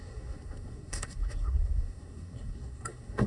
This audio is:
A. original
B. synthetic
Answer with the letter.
B